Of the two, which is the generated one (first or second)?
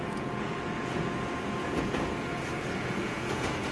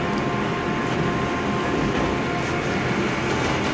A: first